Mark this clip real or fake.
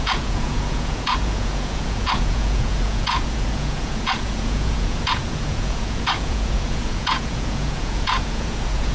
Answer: fake